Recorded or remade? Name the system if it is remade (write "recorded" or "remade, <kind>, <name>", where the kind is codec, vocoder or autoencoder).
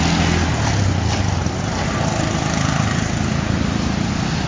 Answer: recorded